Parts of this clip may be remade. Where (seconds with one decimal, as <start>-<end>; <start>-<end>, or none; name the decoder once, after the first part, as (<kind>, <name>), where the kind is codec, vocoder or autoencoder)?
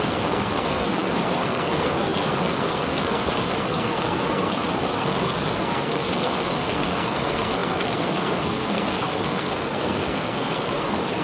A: 0.0-11.2 (codec, SNAC)